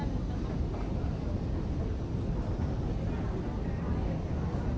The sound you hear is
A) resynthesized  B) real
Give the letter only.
B